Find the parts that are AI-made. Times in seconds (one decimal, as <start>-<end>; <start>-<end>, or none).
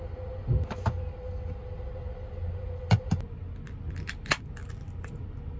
none